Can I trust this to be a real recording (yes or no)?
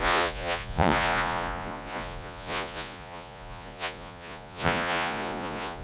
no